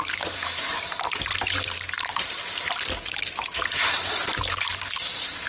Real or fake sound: fake